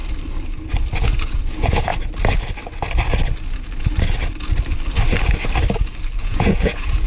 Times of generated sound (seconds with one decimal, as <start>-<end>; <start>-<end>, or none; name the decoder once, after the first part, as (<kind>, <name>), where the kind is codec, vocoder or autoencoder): 1.0-1.9 (vocoder, Vocos); 6.2-7.1